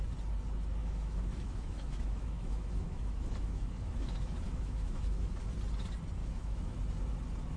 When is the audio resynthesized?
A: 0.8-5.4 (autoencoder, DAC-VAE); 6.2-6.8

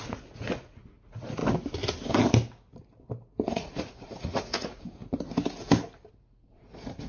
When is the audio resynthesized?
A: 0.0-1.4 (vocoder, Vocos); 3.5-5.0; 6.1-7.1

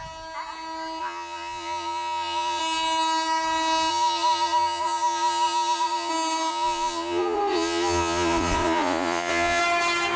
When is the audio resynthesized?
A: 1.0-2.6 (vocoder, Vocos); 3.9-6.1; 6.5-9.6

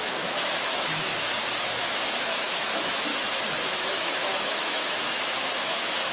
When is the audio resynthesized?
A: 0.0-1.1 (autoencoder, DAC-VAE); 1.6-3.1; 3.8-6.1

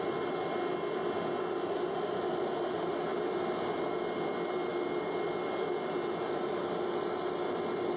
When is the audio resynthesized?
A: none